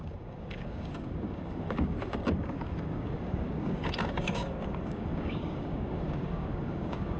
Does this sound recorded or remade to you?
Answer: remade